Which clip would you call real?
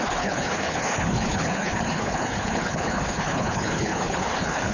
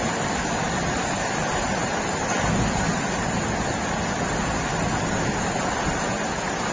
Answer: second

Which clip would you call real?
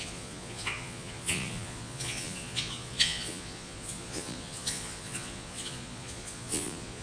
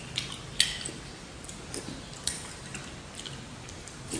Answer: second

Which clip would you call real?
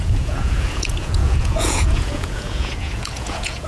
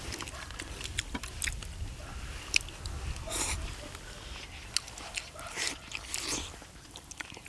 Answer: second